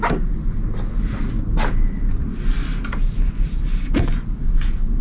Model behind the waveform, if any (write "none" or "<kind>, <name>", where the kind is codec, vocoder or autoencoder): none